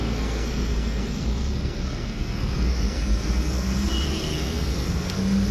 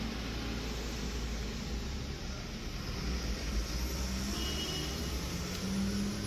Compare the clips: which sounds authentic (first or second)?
second